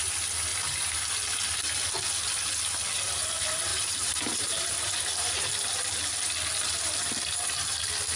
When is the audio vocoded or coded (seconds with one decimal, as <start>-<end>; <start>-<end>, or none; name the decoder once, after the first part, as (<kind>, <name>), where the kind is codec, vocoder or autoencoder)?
3.7-5.3 (vocoder, BigVGAN v2)